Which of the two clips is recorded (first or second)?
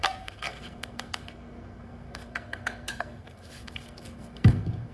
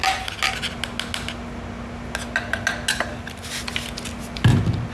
second